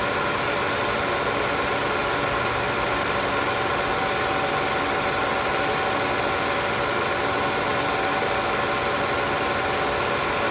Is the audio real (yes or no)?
yes